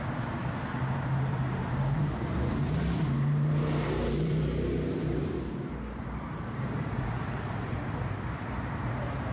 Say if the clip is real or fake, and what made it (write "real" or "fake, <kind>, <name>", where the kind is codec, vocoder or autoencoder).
fake, vocoder, BigVGAN v2